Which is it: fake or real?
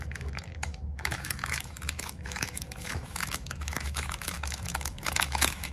fake